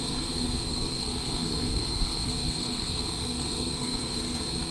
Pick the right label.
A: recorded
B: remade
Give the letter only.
B